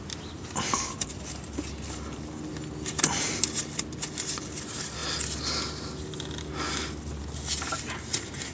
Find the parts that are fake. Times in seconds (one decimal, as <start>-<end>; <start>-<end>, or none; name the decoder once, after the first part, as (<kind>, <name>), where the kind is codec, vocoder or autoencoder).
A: none